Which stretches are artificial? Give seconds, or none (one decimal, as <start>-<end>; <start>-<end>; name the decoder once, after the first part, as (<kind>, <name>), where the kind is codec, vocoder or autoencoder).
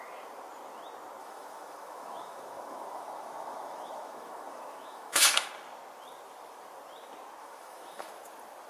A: 1.2-5.5 (autoencoder, DAC-VAE); 7.4-8.1